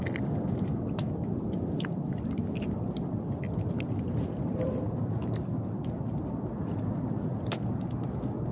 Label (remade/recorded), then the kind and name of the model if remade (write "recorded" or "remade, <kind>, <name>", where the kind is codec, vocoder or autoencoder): recorded